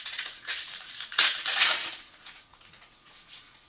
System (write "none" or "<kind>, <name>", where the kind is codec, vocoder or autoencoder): vocoder, Vocos